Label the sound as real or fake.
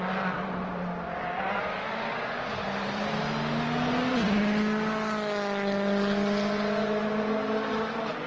real